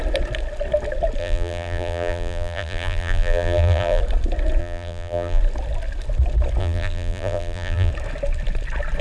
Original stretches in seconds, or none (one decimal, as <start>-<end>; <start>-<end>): 0.0-1.2; 4.0-4.6; 5.4-6.6; 7.9-9.0

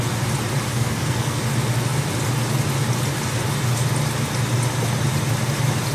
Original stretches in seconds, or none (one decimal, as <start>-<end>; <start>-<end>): 0.0-0.7; 1.4-5.9

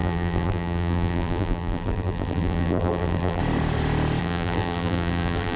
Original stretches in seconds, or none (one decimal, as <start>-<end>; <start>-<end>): 3.4-4.2